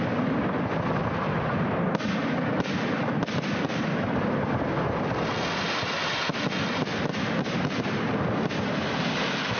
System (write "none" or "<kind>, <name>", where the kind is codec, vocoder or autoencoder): none